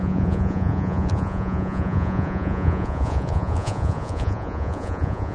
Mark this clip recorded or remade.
remade